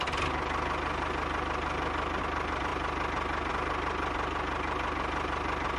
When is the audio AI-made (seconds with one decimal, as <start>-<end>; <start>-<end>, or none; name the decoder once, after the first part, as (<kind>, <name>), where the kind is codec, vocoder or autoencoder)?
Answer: none